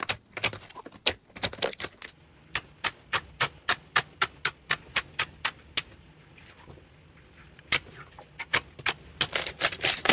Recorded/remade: recorded